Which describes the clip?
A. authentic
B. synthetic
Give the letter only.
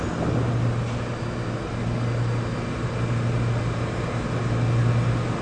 A